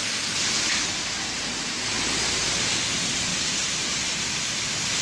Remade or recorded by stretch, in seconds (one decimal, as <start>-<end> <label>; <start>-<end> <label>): 0.0-2.7 remade; 2.7-3.3 recorded; 3.3-4.1 remade; 4.1-5.0 recorded